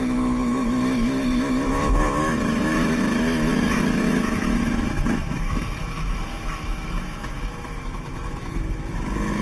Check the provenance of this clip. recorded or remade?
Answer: remade